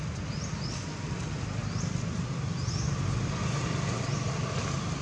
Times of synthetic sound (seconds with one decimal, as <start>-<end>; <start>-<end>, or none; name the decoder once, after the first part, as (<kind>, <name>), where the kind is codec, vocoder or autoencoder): none